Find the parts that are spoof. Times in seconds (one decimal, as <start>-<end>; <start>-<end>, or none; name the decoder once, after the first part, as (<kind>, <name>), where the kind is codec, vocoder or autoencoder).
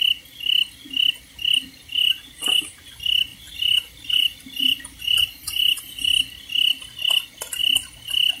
1.8-2.8 (vocoder, BigVGAN v2); 3.3-5.8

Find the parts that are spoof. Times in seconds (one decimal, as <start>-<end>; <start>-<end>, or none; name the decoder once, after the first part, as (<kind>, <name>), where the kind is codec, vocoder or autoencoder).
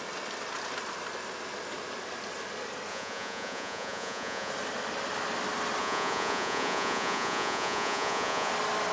2.9-4.5 (vocoder, Vocos); 5.8-8.5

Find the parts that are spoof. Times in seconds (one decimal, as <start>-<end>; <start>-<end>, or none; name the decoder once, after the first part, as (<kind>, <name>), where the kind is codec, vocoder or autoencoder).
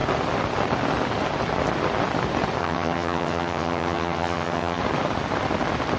2.6-4.8 (vocoder, HiFi-GAN)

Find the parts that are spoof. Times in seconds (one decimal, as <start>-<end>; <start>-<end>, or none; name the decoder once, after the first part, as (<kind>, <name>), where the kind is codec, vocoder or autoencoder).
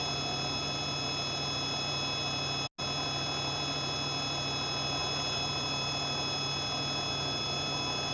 none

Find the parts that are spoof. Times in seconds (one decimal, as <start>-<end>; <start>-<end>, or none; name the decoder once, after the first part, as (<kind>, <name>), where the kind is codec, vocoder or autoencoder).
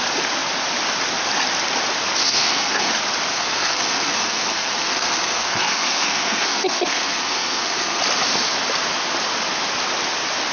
2.2-2.9 (codec, SNAC); 3.3-8.0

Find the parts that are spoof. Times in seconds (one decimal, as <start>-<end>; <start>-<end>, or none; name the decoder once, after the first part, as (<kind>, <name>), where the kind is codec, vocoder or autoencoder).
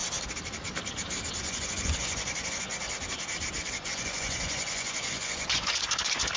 1.4-2.7 (vocoder, Vocos); 3.5-6.4